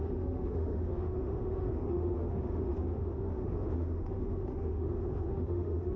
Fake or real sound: fake